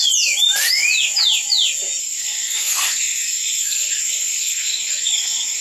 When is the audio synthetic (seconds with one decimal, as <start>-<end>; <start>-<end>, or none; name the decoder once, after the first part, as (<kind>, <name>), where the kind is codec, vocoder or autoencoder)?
2.0-5.6 (codec, SNAC)